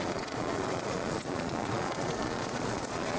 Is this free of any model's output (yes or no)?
no